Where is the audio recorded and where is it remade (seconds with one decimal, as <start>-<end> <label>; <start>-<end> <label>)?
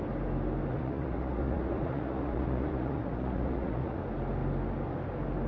0.0-0.7 recorded; 0.7-4.0 remade; 4.0-5.5 recorded